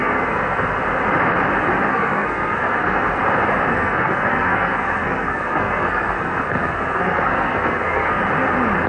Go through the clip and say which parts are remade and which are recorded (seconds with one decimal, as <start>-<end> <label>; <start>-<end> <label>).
0.0-0.8 remade; 0.8-1.9 recorded; 1.9-3.2 remade; 3.2-3.7 recorded; 3.7-8.2 remade; 8.2-8.9 recorded